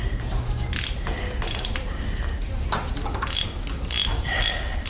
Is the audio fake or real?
real